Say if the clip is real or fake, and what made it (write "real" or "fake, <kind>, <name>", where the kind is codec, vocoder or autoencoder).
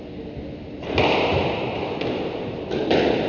real